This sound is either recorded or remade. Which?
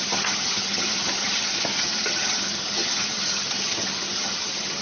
remade